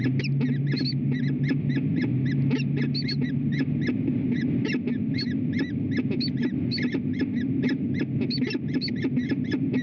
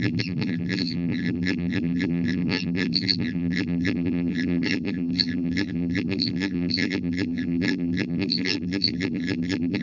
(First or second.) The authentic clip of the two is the first